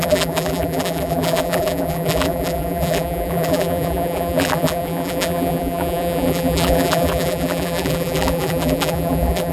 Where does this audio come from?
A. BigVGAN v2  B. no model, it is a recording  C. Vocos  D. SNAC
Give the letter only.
A